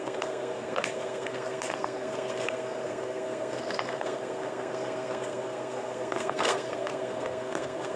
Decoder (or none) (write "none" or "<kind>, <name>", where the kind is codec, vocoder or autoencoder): codec, SNAC